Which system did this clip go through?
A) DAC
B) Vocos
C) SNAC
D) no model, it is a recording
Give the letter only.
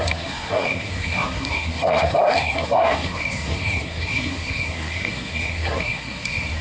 C